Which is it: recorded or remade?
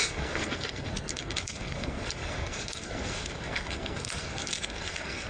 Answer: remade